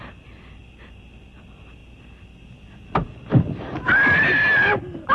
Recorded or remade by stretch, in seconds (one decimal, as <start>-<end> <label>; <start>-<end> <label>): 0.0-5.1 recorded